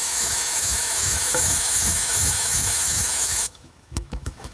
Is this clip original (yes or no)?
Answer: no